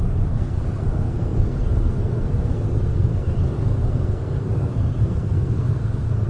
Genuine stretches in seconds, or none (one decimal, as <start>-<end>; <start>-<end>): none